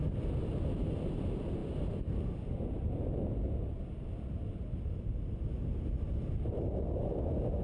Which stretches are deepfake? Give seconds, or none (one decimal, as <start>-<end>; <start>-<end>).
none